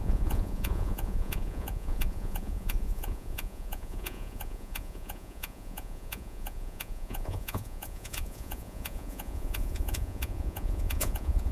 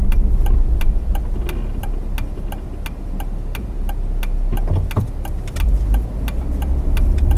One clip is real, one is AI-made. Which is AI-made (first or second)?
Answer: first